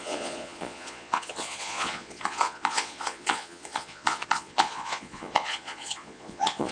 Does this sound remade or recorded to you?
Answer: remade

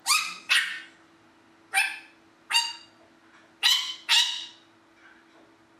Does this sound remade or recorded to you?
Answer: recorded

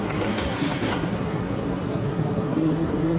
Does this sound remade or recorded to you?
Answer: remade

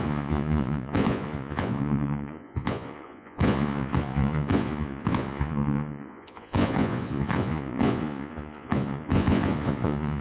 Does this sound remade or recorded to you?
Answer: remade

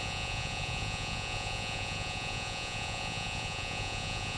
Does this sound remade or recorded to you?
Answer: remade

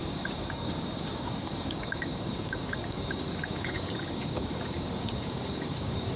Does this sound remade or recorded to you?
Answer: remade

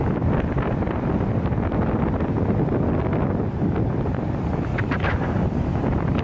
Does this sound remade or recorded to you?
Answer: recorded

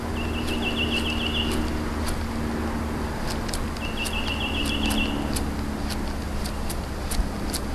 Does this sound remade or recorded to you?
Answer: recorded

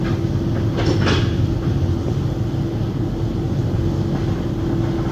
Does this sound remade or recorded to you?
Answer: recorded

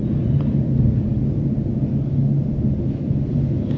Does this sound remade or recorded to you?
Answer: recorded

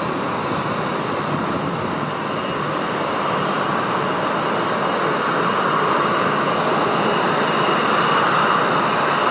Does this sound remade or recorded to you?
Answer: recorded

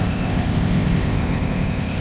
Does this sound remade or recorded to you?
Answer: remade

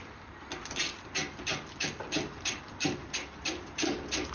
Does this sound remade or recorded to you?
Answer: recorded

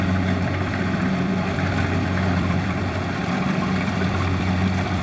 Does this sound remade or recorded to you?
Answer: remade